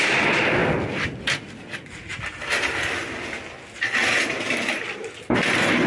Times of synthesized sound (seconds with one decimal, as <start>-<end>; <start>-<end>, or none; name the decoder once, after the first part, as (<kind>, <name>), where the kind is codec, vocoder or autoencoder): none